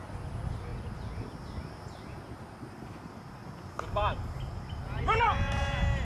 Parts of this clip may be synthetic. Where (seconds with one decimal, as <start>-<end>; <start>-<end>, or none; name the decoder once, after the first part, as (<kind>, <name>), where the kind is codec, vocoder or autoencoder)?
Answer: none